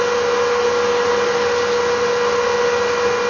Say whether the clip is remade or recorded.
recorded